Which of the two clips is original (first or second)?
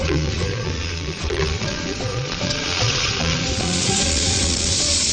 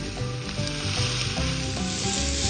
second